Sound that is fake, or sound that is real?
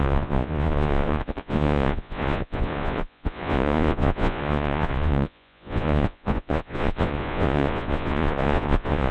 fake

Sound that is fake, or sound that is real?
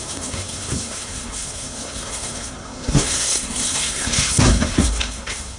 fake